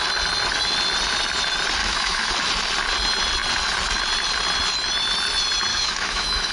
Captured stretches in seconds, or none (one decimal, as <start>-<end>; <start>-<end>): 0.0-1.8; 2.3-5.7